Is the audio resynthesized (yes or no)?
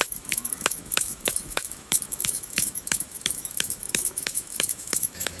yes